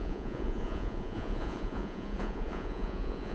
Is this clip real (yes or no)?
no